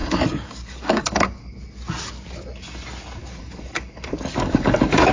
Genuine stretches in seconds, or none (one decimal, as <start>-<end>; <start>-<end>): 1.5-3.2